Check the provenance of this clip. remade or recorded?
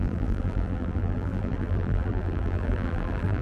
remade